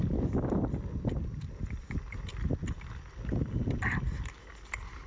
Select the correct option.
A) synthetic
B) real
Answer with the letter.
B